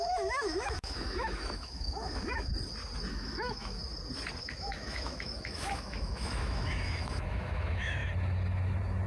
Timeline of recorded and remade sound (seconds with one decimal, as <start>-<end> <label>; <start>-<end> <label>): 0.0-2.5 remade; 2.5-3.1 recorded; 3.1-3.8 remade; 3.8-4.4 recorded; 4.4-8.0 remade; 8.0-9.1 recorded